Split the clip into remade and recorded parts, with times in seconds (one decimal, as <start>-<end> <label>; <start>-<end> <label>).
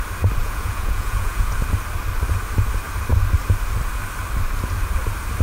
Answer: 0.0-0.4 recorded; 0.4-1.5 remade; 1.5-5.4 recorded